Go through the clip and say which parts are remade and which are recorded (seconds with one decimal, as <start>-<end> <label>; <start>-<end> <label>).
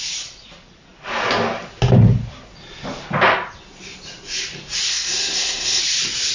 0.0-4.9 recorded; 4.9-5.8 remade; 5.8-6.3 recorded